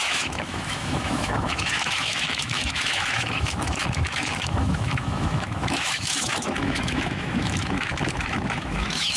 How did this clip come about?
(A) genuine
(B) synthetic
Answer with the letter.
B